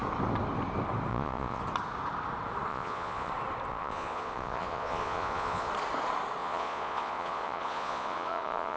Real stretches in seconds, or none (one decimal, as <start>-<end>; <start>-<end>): 0.0-1.1; 1.6-2.7; 3.3-3.7; 5.7-6.4